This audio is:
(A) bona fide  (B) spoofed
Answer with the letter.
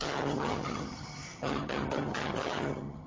B